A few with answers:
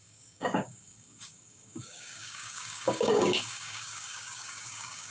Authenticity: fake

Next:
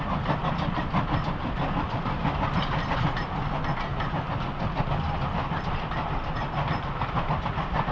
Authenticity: real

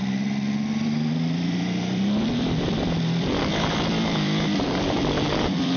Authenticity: fake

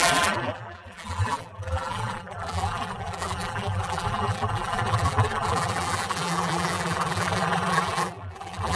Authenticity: fake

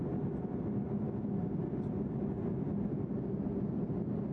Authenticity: real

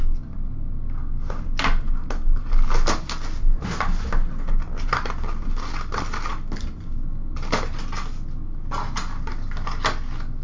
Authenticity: real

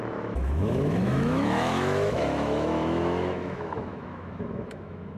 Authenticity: fake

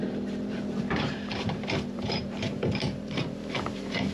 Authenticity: fake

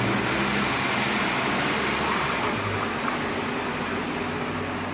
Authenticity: real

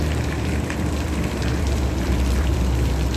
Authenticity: fake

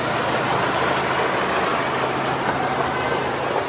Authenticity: real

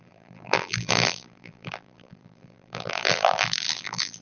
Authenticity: fake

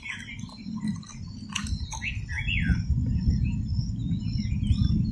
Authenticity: real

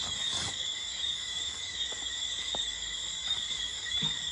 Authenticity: fake